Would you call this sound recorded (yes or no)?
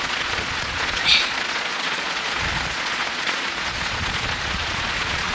no